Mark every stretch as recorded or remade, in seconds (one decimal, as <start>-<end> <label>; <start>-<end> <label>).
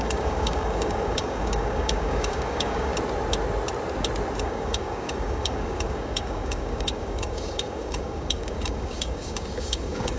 0.0-2.9 remade; 2.9-4.4 recorded; 4.4-10.2 remade